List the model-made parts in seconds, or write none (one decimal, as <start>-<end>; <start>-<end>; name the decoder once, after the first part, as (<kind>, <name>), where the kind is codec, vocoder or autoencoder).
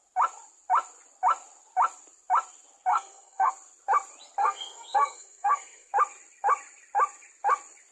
2.9-3.5 (codec, SNAC); 4.4-5.9